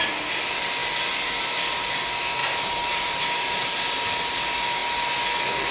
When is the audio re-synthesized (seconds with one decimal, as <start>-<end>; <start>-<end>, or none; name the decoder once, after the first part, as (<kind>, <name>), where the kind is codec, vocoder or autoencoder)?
2.4-3.7 (vocoder, BigVGAN v2)